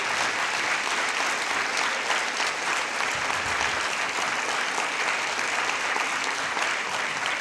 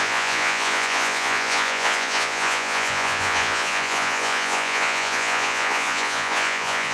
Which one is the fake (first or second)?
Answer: second